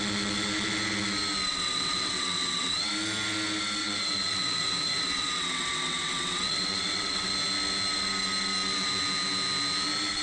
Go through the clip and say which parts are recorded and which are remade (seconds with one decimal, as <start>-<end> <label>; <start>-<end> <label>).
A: 0.0-1.5 recorded; 1.5-2.9 remade; 2.9-3.8 recorded; 3.8-7.3 remade; 7.3-10.2 recorded